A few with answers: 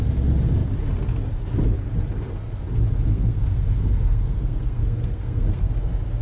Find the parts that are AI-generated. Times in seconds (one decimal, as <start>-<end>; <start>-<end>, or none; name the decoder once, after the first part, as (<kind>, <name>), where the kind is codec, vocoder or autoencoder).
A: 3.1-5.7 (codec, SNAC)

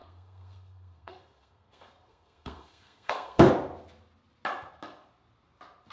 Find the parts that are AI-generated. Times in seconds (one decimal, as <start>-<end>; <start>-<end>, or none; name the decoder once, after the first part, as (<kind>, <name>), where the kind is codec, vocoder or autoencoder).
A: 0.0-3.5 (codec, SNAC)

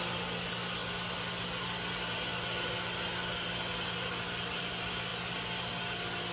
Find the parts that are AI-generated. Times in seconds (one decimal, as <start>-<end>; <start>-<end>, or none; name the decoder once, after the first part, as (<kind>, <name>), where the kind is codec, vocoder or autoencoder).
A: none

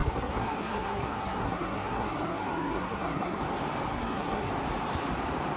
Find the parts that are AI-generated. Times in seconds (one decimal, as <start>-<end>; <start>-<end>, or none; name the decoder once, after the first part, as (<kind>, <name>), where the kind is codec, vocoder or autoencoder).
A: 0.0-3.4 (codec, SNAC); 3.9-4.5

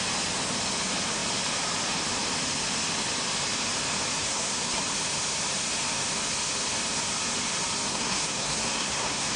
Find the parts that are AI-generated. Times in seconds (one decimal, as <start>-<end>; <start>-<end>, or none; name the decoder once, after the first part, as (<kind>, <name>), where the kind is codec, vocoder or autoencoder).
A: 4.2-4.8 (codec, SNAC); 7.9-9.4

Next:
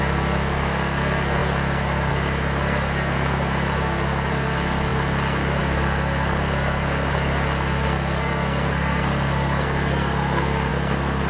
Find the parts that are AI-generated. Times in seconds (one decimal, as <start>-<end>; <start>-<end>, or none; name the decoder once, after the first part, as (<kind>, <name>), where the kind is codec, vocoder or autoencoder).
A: 0.0-11.3 (codec, SNAC)